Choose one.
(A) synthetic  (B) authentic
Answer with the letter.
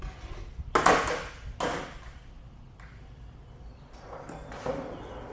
B